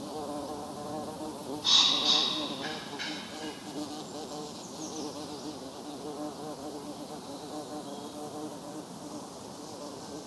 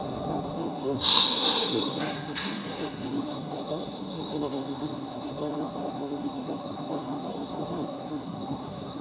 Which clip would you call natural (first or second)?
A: first